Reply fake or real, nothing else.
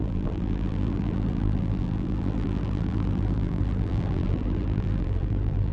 fake